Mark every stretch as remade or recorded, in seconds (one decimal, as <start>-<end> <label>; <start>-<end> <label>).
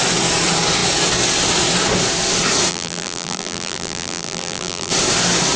0.0-2.7 recorded; 2.7-4.9 remade; 4.9-5.6 recorded